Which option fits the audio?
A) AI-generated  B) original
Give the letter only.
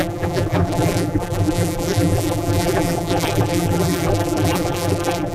A